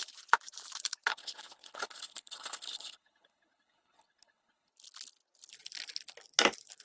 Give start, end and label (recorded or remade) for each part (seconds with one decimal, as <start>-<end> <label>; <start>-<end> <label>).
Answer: 0.0-1.1 recorded; 1.1-4.7 remade; 4.7-6.8 recorded